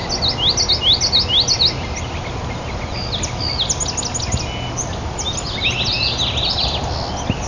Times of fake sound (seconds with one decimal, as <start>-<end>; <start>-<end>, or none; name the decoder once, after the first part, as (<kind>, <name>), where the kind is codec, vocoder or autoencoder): none